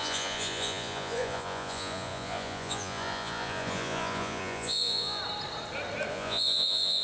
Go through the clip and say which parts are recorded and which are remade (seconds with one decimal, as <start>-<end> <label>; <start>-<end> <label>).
0.0-5.2 remade; 5.2-6.1 recorded; 6.1-7.0 remade